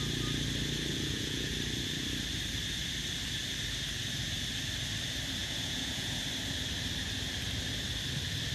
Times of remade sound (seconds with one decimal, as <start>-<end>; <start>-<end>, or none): 0.9-1.5; 5.4-6.2